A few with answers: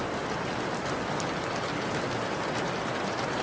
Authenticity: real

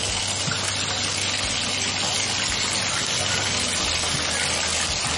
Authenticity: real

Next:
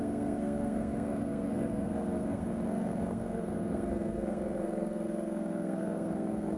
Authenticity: fake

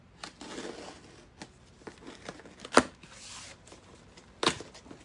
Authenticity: real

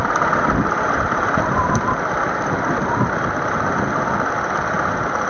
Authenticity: real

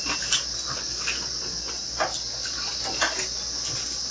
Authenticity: real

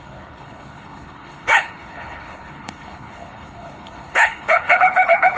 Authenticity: fake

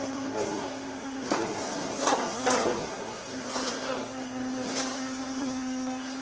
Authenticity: fake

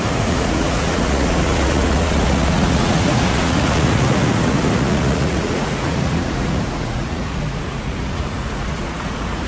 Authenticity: fake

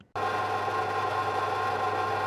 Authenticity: real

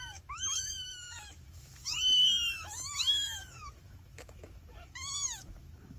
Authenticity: fake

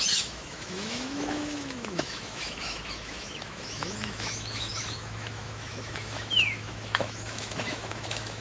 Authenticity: fake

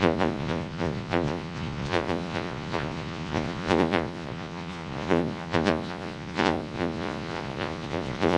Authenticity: fake